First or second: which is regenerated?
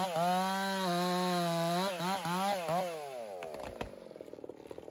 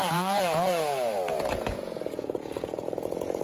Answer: second